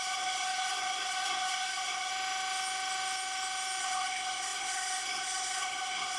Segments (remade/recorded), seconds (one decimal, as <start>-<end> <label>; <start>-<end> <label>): 0.0-2.1 remade; 2.1-3.8 recorded; 3.8-6.2 remade